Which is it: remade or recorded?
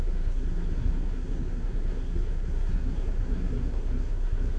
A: remade